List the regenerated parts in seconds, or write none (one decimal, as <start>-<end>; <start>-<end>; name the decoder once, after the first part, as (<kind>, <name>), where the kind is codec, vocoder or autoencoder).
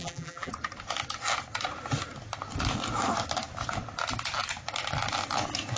0.0-0.5 (vocoder, BigVGAN v2)